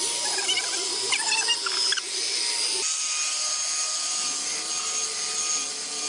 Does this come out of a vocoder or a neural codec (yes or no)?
no